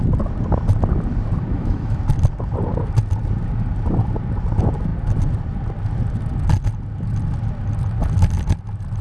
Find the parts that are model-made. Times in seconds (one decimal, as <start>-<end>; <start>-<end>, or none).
1.5-2.0